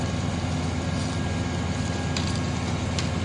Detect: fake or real real